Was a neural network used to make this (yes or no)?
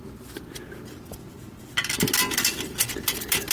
no